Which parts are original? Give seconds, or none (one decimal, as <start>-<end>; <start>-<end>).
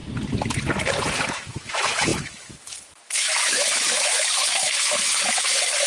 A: 0.0-1.2